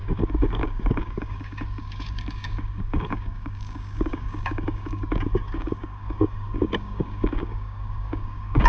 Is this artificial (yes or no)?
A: yes